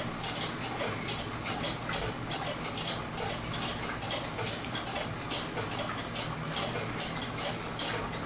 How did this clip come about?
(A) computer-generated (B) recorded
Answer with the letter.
B